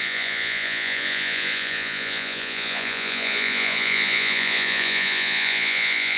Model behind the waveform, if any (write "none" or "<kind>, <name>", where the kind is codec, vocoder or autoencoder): vocoder, Vocos